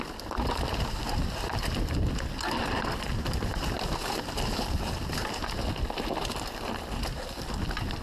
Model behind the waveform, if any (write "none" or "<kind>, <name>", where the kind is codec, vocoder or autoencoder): none